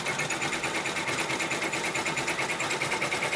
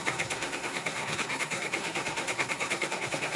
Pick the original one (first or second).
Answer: first